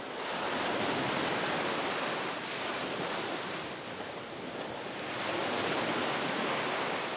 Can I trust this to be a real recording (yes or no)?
yes